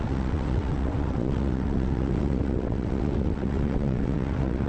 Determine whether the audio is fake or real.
fake